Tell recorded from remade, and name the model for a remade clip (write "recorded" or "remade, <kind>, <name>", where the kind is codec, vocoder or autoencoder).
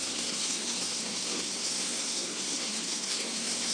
remade, codec, SNAC